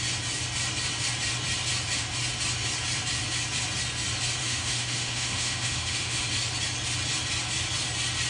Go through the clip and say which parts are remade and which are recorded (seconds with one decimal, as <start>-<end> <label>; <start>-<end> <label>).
0.0-4.4 recorded; 4.4-6.2 remade; 6.2-8.3 recorded